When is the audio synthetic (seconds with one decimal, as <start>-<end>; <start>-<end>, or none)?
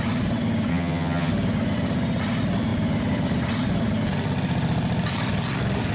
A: 0.7-1.3